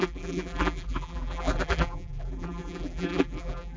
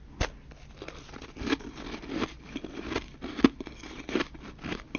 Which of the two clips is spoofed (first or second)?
first